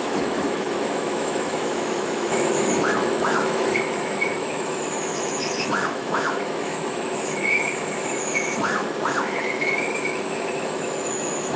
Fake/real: fake